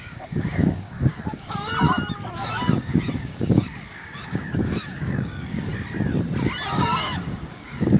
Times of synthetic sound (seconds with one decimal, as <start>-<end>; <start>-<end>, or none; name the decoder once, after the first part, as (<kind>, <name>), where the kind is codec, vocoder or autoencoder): 0.0-1.7 (codec, DAC); 2.3-5.7; 6.7-8.0